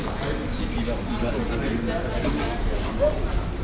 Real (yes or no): yes